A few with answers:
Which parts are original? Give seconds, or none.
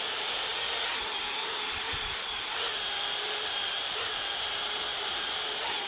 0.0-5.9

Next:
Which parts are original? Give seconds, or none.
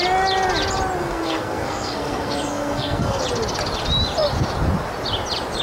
0.0-1.0; 3.2-5.6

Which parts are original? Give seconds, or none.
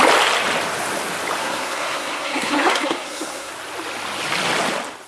0.0-1.4; 3.5-5.1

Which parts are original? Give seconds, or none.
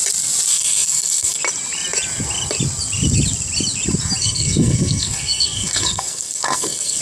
0.0-0.5; 1.4-4.2